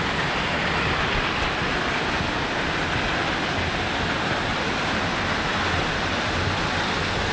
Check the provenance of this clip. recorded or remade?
recorded